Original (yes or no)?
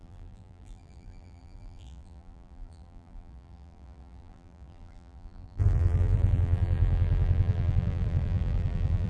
no